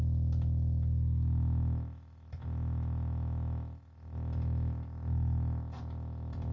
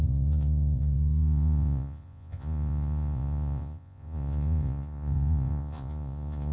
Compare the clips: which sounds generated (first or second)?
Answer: second